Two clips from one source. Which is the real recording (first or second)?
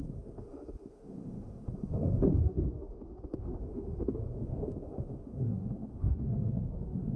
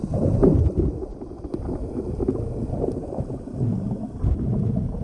second